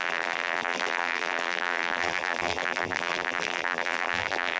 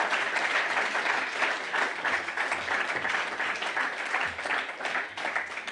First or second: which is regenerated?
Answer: first